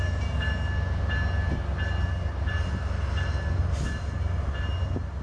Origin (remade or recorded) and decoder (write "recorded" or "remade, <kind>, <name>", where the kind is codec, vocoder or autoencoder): recorded